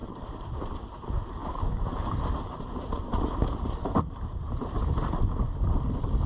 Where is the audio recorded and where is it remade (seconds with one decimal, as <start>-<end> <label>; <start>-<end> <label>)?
0.0-0.8 remade; 0.8-1.4 recorded; 1.4-5.2 remade; 5.2-6.3 recorded